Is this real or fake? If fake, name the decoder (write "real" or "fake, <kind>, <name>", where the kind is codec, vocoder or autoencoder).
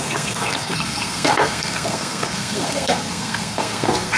fake, codec, SNAC